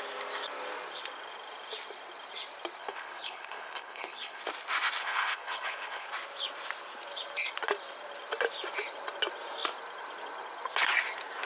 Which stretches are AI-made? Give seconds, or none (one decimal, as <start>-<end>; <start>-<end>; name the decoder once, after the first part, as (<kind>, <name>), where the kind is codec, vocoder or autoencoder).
2.8-4.4 (codec, HILCodec); 5.0-6.1